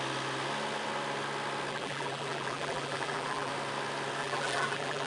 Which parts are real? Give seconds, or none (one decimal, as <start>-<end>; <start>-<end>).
0.0-1.7; 3.5-4.2